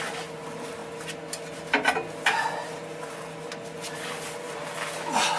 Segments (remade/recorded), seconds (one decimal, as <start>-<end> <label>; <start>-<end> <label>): 0.0-5.4 recorded